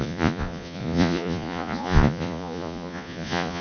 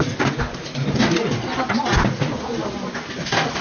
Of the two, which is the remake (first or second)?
first